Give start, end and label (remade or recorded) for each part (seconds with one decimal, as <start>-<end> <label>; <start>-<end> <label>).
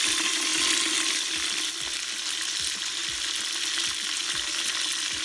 0.0-5.2 recorded